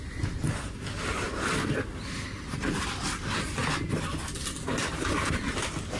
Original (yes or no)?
yes